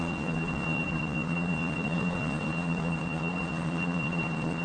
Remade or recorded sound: remade